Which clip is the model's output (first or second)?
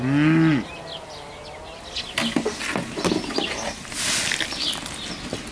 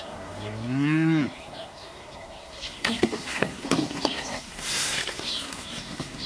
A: second